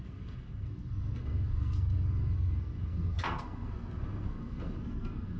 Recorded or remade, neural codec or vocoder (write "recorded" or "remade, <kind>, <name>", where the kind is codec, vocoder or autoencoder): remade, codec, SNAC